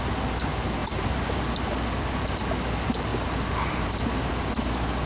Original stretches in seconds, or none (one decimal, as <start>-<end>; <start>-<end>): 0.0-0.8; 1.4-3.1; 4.3-5.1